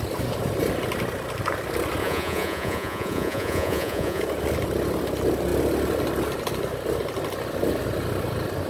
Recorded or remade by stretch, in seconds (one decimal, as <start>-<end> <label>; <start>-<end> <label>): 0.0-2.0 recorded; 2.0-4.2 remade; 4.2-8.7 recorded